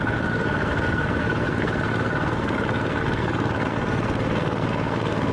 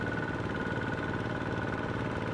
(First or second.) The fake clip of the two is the first